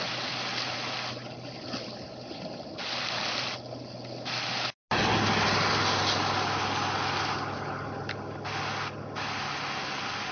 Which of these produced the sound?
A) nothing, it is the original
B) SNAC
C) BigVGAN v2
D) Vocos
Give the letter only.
A